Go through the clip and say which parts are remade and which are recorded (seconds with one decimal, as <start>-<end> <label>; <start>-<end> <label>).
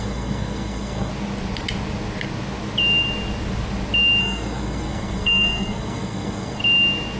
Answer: 0.0-1.1 remade; 1.1-4.2 recorded; 4.2-6.6 remade; 6.6-7.2 recorded